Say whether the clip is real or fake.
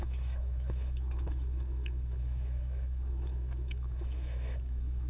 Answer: fake